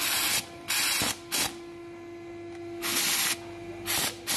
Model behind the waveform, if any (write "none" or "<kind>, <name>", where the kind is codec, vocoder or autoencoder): none